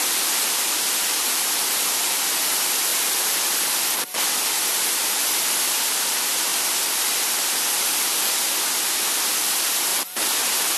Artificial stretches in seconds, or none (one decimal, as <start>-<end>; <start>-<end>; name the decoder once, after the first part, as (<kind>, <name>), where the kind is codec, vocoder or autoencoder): none